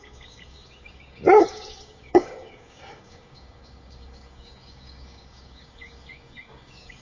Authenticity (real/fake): fake